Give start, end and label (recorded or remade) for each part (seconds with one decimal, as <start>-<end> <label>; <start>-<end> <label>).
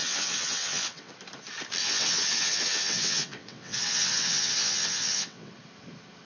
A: 0.0-1.1 remade; 1.1-1.8 recorded; 1.8-5.5 remade; 5.5-6.2 recorded